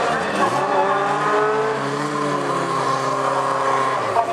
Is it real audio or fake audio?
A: real